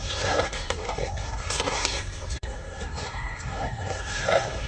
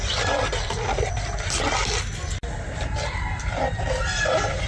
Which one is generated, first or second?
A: first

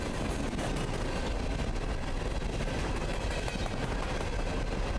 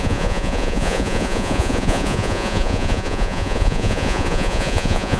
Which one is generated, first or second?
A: second